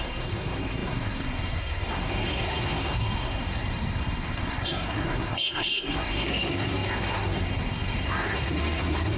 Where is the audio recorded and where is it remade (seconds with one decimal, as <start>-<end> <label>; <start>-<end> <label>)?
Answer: 0.0-9.2 remade